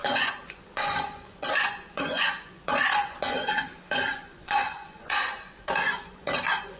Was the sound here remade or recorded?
remade